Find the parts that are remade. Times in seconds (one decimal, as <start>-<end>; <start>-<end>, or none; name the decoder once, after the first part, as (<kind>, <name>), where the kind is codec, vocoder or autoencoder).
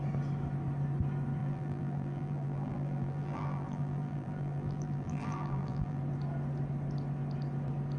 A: 1.4-6.0 (vocoder, BigVGAN v2)